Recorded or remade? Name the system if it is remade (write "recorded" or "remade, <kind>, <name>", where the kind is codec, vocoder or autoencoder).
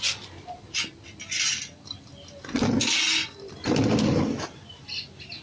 recorded